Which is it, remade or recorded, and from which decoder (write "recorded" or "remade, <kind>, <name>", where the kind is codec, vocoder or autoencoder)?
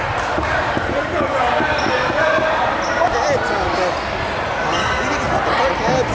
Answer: recorded